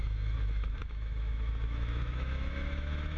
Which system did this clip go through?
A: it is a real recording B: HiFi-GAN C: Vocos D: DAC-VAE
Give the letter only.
D